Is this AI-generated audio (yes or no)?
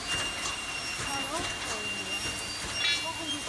no